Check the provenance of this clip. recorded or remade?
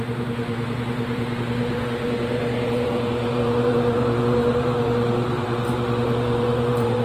remade